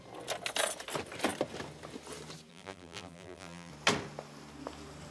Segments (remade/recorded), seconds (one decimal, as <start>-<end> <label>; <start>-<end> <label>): 0.0-2.5 recorded; 2.5-3.7 remade; 3.7-5.1 recorded